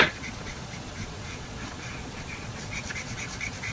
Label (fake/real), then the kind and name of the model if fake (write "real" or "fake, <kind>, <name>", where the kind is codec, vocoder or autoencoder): fake, vocoder, Vocos